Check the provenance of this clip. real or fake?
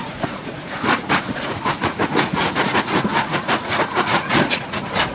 fake